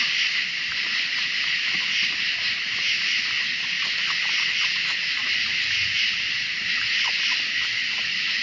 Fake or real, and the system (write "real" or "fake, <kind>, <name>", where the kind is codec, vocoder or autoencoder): real